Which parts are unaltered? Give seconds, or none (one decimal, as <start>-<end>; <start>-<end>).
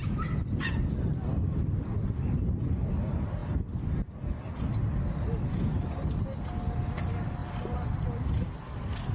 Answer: 0.0-7.4; 8.1-9.1